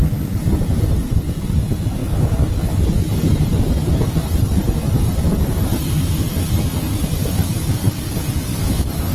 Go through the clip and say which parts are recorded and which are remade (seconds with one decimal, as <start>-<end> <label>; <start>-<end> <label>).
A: 0.0-8.5 recorded; 8.5-9.1 remade